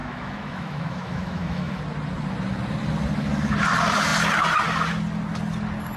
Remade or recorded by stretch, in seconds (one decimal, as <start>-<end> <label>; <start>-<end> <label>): 0.0-1.8 remade; 1.8-6.0 recorded